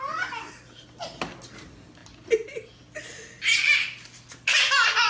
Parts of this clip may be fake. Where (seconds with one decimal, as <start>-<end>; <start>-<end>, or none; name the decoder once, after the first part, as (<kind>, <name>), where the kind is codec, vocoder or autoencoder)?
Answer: none